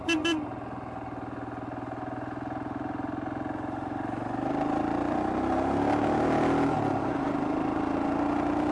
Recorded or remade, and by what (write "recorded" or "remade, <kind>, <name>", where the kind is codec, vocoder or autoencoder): recorded